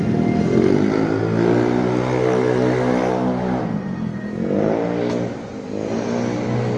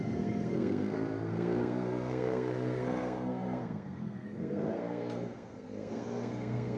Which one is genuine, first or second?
first